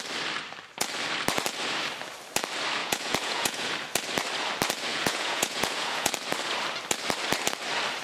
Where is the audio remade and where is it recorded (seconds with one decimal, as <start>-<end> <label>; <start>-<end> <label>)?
0.0-2.8 recorded; 2.8-3.7 remade; 3.7-4.9 recorded; 4.9-6.1 remade; 6.1-8.0 recorded